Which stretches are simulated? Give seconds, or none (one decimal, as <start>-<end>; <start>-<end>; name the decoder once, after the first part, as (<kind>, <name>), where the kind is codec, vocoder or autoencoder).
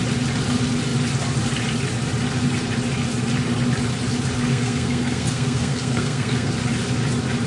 4.5-6.5 (codec, SNAC)